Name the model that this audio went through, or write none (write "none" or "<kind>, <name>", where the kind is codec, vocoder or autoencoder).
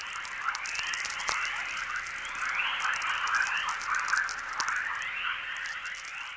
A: none